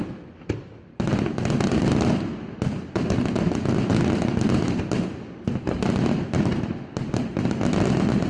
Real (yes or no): yes